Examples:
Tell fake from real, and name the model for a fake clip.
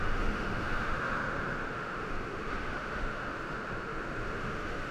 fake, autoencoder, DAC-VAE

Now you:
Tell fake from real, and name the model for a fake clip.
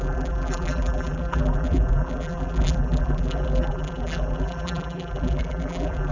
fake, vocoder, BigVGAN v2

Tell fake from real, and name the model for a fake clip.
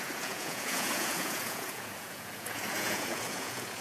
fake, vocoder, Vocos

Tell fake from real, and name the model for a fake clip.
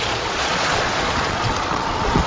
fake, vocoder, Vocos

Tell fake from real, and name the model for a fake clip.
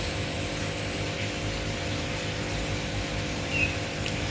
real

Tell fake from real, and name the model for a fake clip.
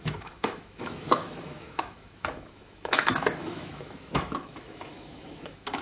fake, autoencoder, DAC-VAE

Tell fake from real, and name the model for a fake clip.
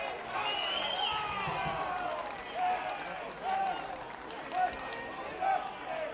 real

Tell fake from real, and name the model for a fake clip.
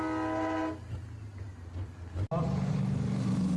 real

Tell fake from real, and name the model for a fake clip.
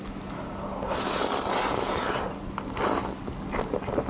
real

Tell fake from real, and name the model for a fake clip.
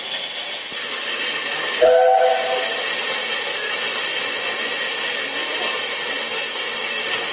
real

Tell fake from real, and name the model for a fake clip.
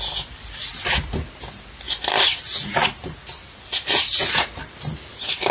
real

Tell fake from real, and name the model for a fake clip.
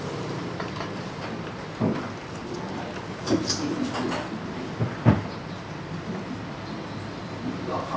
real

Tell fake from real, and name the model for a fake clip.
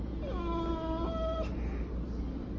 real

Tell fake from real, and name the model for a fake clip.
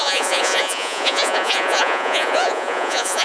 fake, vocoder, Vocos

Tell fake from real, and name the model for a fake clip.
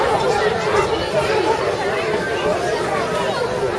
real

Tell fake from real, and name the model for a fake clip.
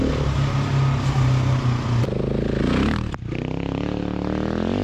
real